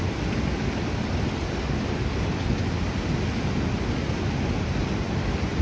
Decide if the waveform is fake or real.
real